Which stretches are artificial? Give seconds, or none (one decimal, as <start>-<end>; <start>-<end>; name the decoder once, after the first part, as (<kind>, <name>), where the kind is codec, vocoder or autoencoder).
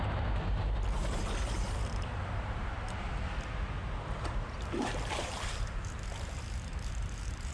0.0-2.7 (vocoder, BigVGAN v2); 4.0-7.5